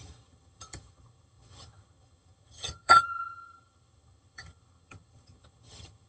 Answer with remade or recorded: remade